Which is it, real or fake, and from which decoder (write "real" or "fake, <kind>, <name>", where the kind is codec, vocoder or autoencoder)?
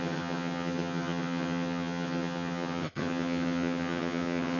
fake, vocoder, HiFi-GAN